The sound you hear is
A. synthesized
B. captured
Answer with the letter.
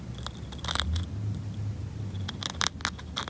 B